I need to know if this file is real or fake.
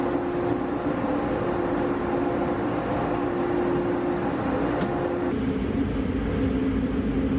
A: real